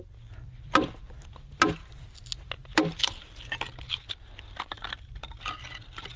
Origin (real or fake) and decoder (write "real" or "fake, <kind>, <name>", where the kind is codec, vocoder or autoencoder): real